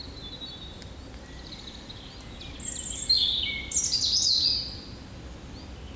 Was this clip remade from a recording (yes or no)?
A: no